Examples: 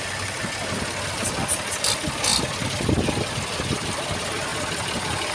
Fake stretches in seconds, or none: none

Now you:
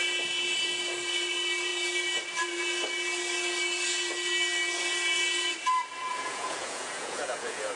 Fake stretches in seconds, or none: 6.1-7.8 (vocoder, Vocos)